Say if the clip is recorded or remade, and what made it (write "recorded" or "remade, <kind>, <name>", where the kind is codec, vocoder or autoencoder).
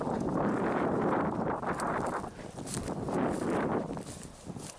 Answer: recorded